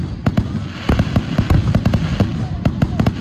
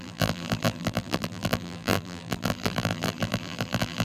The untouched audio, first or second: first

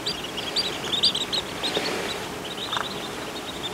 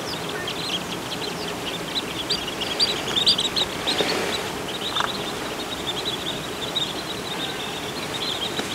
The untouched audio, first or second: first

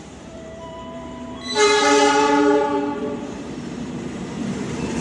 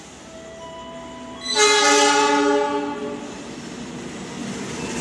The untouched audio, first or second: second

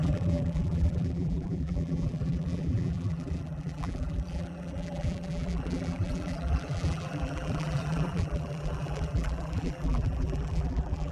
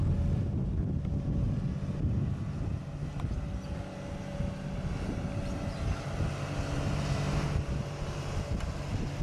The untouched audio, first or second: second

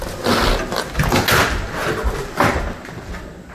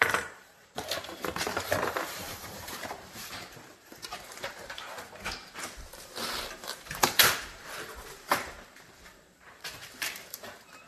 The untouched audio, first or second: first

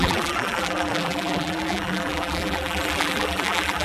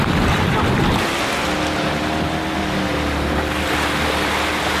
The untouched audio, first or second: second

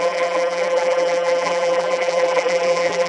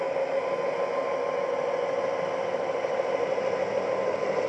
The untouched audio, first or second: second